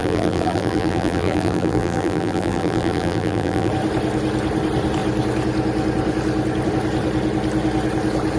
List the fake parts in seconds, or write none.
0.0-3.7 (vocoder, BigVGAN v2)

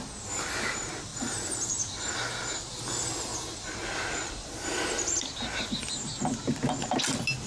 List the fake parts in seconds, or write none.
none

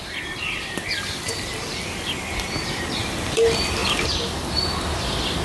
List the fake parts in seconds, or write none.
0.0-5.4 (vocoder, BigVGAN v2)

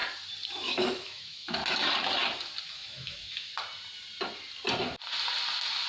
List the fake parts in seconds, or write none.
0.5-1.6 (autoencoder, DAC-VAE); 2.7-3.5

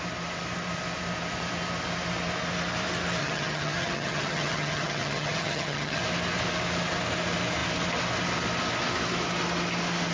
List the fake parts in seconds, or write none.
3.2-6.0 (vocoder, HiFi-GAN)

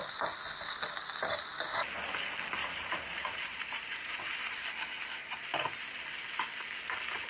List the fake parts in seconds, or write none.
2.6-4.3 (vocoder, Vocos)

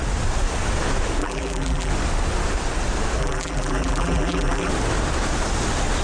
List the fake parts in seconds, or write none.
1.2-1.9 (vocoder, BigVGAN v2); 3.2-4.7

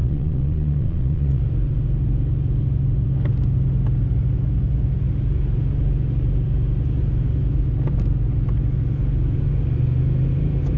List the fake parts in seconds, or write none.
0.0-1.4 (vocoder, Vocos)